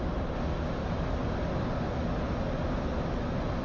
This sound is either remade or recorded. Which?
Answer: recorded